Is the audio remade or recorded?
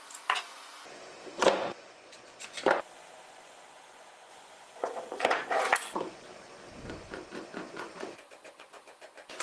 remade